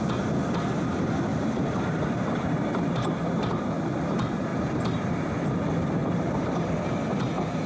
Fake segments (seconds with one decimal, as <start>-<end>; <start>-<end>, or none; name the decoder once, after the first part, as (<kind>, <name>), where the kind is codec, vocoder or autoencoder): 1.3-3.6 (vocoder, BigVGAN v2); 4.5-5.1; 6.0-6.7